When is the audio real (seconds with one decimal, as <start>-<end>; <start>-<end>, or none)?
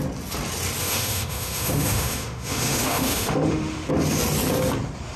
0.0-0.8; 3.9-5.2